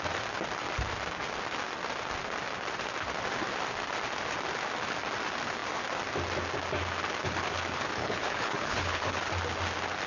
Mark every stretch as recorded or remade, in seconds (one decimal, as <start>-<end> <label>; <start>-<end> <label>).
0.0-8.0 recorded; 8.0-9.2 remade; 9.2-10.1 recorded